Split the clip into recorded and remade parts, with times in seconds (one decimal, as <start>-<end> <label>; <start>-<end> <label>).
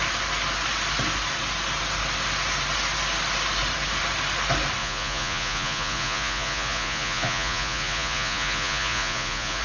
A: 0.0-4.8 recorded; 4.8-9.6 remade